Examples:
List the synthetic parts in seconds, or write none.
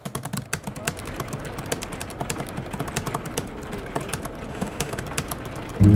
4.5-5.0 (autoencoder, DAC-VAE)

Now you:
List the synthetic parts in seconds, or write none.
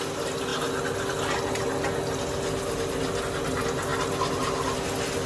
none